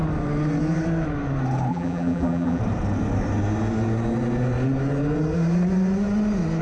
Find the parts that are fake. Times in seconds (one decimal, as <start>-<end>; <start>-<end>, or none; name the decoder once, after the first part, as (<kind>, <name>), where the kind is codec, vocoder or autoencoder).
1.7-2.6 (vocoder, BigVGAN v2)